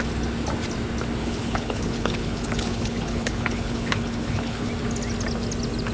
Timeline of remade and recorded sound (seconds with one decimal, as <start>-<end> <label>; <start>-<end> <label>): 0.0-1.2 recorded; 1.2-4.7 remade; 4.7-5.9 recorded